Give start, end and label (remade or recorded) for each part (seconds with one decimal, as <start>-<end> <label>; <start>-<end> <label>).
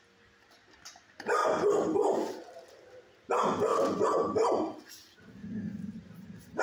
0.0-1.4 recorded; 1.4-2.7 remade; 2.7-3.7 recorded; 3.7-4.9 remade; 4.9-5.4 recorded; 5.4-6.1 remade; 6.1-6.6 recorded